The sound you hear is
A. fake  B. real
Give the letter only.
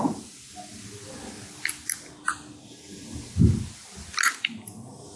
B